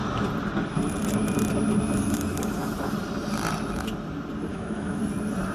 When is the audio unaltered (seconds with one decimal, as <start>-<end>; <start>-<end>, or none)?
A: 0.0-4.5; 5.0-5.5